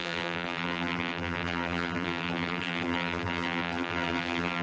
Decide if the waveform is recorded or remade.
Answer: remade